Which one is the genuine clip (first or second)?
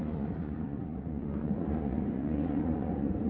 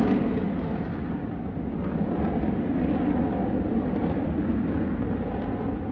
second